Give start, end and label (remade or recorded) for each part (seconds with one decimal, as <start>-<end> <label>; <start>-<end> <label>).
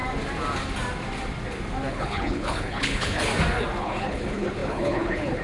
0.0-1.9 recorded; 1.9-3.3 remade; 3.3-3.8 recorded; 3.8-5.4 remade